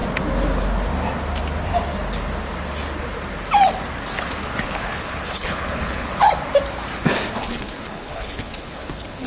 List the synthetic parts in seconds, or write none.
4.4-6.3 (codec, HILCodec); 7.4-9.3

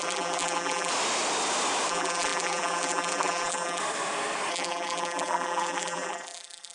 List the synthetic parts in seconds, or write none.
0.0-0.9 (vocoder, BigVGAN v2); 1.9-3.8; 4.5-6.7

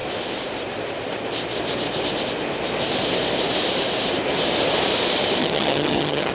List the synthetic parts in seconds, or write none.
5.4-6.3 (vocoder, HiFi-GAN)

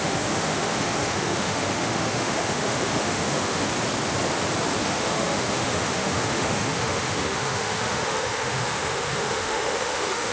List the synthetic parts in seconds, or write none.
0.0-3.7 (autoencoder, DAC-VAE); 4.8-10.3